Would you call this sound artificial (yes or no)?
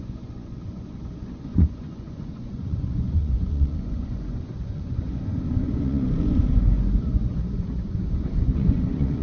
yes